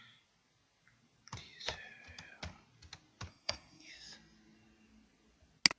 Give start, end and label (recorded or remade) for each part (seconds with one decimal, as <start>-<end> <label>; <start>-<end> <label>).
0.0-3.3 recorded; 3.3-3.9 remade; 3.9-5.8 recorded